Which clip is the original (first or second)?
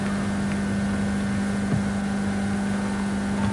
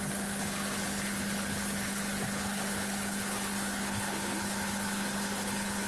first